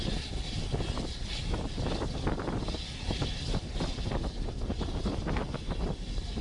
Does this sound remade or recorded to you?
recorded